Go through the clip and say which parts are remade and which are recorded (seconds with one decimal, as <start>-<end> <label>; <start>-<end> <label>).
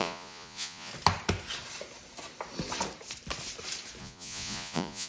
0.0-0.9 remade; 0.9-4.0 recorded; 4.0-5.1 remade